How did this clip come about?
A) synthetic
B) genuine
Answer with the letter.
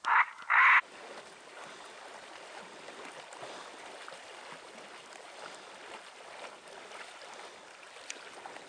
B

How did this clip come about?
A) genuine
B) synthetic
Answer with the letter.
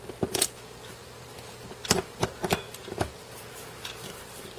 A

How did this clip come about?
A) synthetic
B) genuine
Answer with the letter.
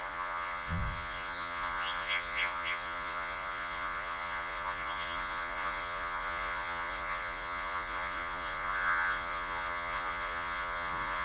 A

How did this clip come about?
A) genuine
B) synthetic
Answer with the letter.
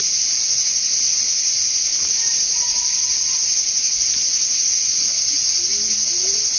A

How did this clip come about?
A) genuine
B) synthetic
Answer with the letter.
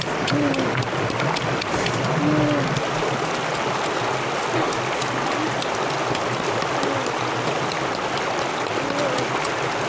A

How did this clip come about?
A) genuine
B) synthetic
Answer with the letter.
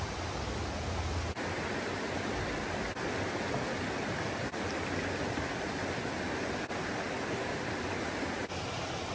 A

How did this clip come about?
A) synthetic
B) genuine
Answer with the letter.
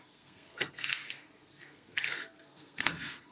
A